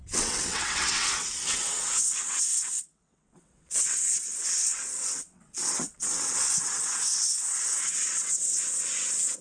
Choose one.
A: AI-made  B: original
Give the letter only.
A